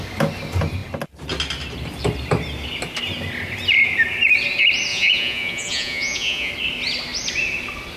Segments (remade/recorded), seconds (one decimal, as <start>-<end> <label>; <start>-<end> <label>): 0.0-4.9 recorded; 4.9-6.5 remade; 6.5-8.0 recorded